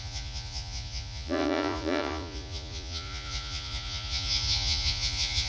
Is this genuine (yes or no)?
no